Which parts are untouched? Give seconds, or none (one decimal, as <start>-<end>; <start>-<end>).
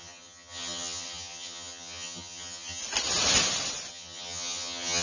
2.8-3.9